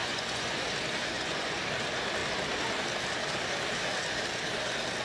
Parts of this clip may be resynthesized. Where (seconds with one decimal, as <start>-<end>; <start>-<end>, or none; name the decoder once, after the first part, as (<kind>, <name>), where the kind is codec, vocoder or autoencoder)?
0.0-0.6 (vocoder, Vocos); 1.0-1.6